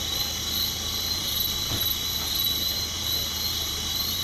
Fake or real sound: fake